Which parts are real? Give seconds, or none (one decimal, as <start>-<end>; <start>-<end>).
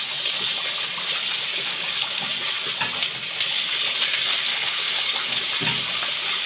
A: 0.0-1.5; 2.2-4.5; 5.5-6.5